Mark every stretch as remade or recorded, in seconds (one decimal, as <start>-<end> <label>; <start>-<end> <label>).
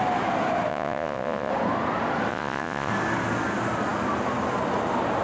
0.0-0.7 recorded; 0.7-1.5 remade; 1.5-2.3 recorded; 2.3-2.9 remade; 2.9-5.2 recorded